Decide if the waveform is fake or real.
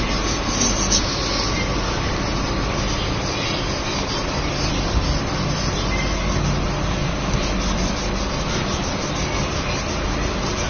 real